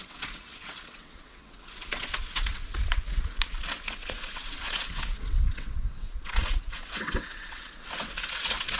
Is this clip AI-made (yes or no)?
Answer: yes